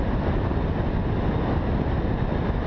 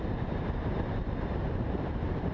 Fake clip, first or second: second